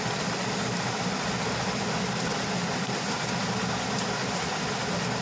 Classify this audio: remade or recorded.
recorded